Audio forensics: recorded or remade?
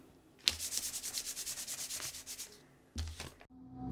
recorded